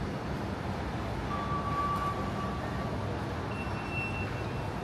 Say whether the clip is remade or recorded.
recorded